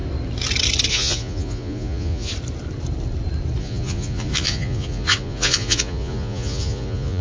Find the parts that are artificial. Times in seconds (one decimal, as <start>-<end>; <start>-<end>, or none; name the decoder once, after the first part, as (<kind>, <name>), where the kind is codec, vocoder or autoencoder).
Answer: 0.9-2.3 (vocoder, Vocos); 3.6-7.2